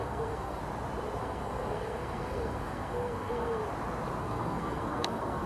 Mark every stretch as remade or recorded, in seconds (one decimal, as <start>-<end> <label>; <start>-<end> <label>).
0.0-0.6 remade; 0.6-1.2 recorded; 1.2-3.6 remade; 3.6-4.2 recorded; 4.2-5.5 remade